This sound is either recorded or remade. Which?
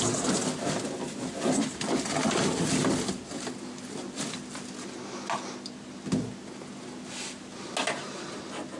recorded